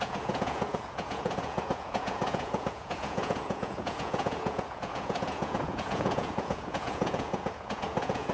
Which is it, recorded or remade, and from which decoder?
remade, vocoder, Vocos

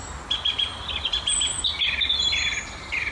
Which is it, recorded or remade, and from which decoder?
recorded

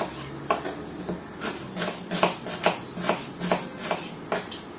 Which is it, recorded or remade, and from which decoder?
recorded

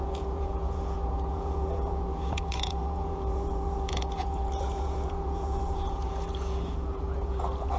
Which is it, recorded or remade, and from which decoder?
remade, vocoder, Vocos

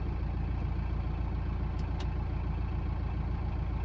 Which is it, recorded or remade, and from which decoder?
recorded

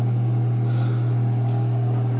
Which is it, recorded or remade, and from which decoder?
recorded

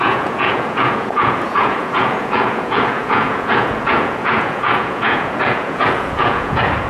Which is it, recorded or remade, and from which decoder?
remade, vocoder, Vocos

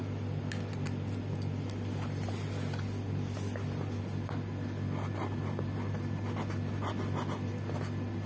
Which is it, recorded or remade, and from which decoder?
recorded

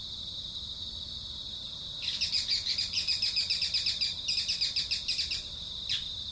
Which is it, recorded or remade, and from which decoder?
recorded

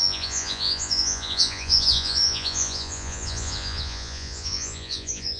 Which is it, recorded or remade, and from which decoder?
remade, vocoder, Vocos